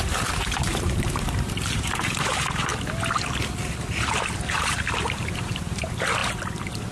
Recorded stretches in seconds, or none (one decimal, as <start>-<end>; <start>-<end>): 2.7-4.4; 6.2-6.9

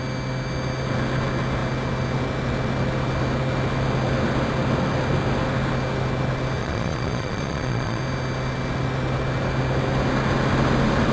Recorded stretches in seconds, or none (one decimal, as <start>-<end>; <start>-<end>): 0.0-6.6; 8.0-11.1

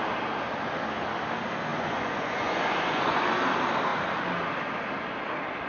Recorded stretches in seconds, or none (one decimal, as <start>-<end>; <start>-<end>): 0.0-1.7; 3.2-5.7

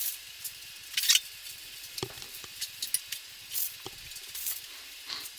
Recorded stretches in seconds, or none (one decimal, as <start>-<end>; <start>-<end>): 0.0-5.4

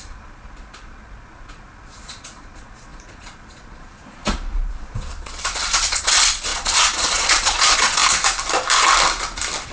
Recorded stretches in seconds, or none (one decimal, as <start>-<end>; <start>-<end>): 8.0-9.7